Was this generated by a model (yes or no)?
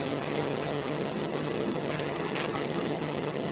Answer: yes